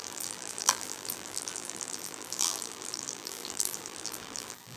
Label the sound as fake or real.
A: fake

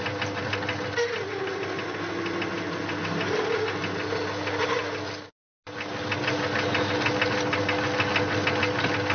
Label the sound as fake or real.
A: real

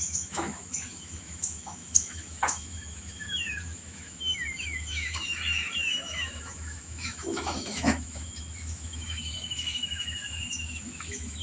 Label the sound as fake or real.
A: fake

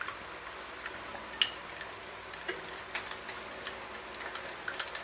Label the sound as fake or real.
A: real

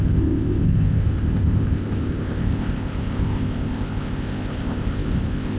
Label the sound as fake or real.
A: fake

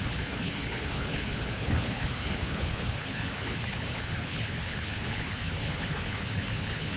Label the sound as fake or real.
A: fake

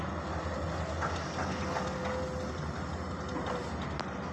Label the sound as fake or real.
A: real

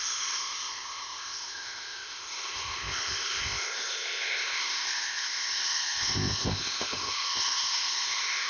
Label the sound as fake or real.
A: fake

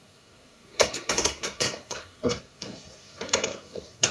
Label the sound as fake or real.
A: fake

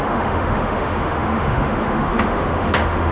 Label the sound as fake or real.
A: fake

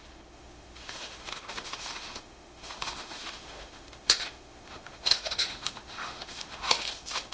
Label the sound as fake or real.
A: fake